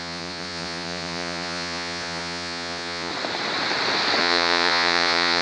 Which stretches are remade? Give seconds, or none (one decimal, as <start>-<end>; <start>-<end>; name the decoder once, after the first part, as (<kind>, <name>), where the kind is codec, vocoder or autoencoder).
0.0-3.1 (vocoder, Vocos); 4.2-5.4